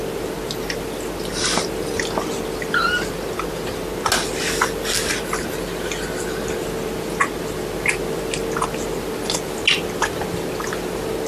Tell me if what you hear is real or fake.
real